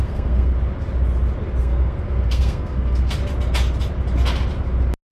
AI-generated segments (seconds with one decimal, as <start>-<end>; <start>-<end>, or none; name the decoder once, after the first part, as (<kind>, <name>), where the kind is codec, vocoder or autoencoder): 0.0-0.5 (codec, SNAC); 1.6-3.2